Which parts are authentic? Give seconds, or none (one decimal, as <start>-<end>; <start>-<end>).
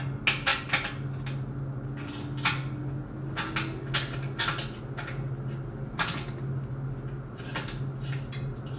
0.0-8.8